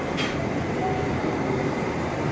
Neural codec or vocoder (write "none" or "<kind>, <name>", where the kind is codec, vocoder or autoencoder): vocoder, BigVGAN v2